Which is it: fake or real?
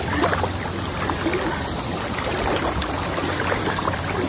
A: real